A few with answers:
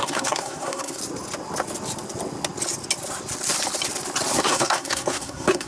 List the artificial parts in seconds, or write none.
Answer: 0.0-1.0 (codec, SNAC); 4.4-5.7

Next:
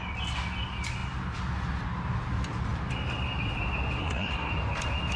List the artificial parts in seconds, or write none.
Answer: 4.0-4.5 (codec, SNAC)

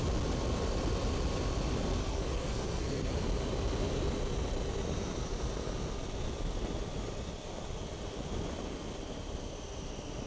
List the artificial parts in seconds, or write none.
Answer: 2.0-3.1 (codec, SNAC)

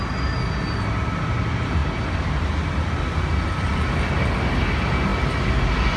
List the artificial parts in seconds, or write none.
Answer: none